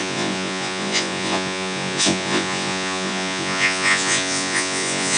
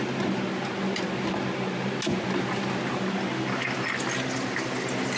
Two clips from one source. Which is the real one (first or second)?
second